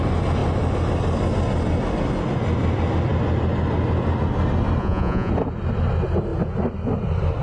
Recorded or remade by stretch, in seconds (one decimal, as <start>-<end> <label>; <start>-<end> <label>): 0.0-4.8 recorded; 4.8-5.3 remade; 5.3-7.4 recorded